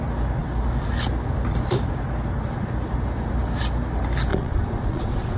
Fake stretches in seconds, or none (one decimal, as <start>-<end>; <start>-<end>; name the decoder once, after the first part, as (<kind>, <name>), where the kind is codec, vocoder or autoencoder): 4.3-5.4 (vocoder, Vocos)